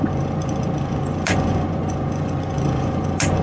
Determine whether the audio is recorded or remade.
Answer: remade